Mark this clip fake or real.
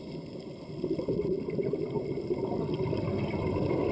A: real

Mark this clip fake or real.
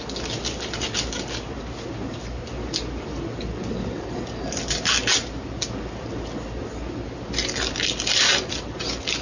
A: real